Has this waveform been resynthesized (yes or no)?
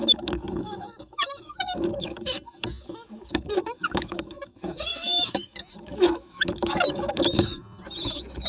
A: yes